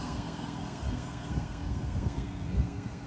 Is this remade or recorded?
remade